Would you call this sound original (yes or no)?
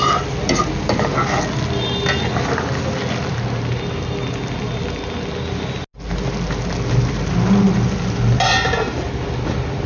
yes